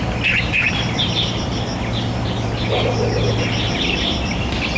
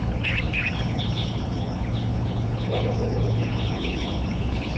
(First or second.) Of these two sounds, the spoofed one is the second